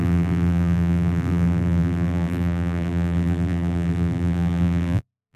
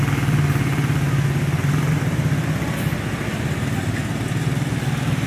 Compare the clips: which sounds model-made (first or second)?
first